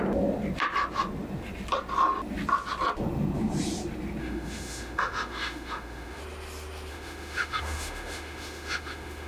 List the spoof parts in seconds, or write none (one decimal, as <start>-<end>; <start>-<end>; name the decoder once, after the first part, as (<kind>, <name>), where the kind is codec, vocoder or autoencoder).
4.2-6.2 (autoencoder, DAC-VAE); 6.9-9.3